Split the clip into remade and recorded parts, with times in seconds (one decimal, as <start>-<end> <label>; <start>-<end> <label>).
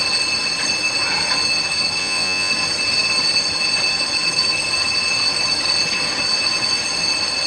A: 0.0-2.0 recorded; 2.0-2.5 remade; 2.5-7.5 recorded